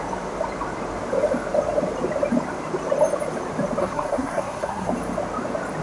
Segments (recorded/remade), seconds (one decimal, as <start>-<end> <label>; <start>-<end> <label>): 0.0-3.8 recorded; 3.8-4.9 remade; 4.9-5.8 recorded